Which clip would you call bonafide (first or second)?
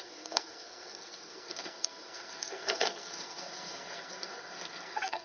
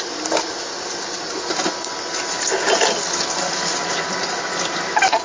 second